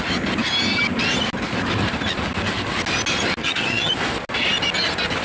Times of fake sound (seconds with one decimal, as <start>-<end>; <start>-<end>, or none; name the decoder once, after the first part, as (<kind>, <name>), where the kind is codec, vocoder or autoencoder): 3.4-3.9 (vocoder, HiFi-GAN)